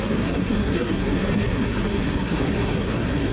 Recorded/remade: remade